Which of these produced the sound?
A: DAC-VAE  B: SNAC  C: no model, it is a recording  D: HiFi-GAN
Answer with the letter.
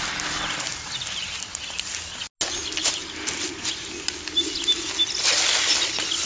C